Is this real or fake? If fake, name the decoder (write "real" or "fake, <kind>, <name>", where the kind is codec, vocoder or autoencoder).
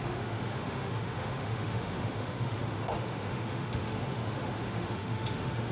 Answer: fake, autoencoder, DAC-VAE